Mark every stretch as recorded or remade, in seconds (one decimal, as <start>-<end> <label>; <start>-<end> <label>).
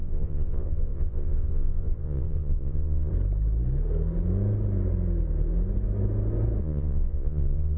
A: 0.0-3.1 remade; 3.1-6.6 recorded; 6.6-7.8 remade